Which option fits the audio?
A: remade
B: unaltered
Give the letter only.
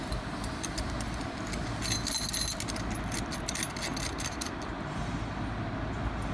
B